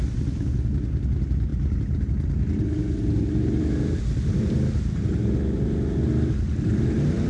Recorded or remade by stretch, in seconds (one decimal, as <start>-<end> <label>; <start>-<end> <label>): 0.0-7.3 recorded